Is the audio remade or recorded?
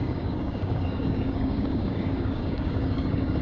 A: remade